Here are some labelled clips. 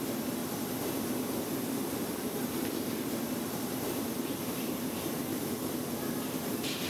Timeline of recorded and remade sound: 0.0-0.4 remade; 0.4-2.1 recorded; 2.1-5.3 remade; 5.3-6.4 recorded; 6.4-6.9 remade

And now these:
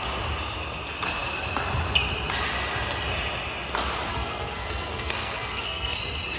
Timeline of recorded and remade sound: 0.0-4.1 recorded; 4.1-6.0 remade; 6.0-6.4 recorded

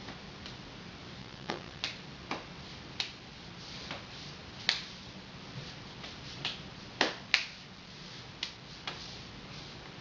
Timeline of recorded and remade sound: 0.0-1.2 recorded; 1.2-1.8 remade; 1.8-10.0 recorded

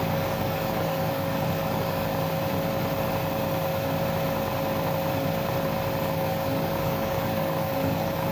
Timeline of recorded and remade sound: 0.0-2.1 remade; 2.1-6.0 recorded; 6.0-8.3 remade

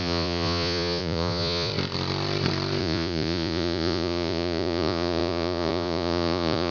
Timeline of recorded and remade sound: 0.0-1.7 remade; 1.7-2.8 recorded; 2.8-6.7 remade

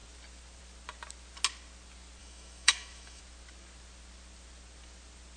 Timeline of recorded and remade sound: 0.0-2.2 recorded; 2.2-3.2 remade; 3.2-5.4 recorded

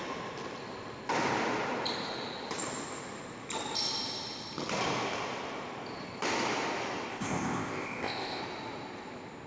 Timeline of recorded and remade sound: 0.0-7.1 recorded; 7.1-8.4 remade; 8.4-9.5 recorded